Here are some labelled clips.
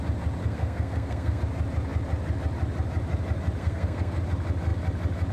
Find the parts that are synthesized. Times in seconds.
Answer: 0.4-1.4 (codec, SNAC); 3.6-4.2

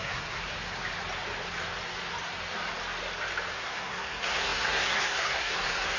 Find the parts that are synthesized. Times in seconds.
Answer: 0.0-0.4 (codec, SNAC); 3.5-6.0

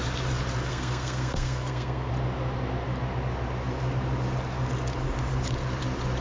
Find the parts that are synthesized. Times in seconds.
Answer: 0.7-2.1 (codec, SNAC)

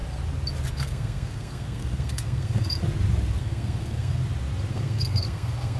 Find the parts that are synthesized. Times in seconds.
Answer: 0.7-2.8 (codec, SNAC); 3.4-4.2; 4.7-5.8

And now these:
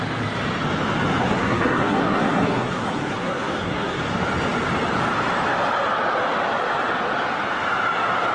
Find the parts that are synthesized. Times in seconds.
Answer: 1.2-4.0 (codec, SNAC)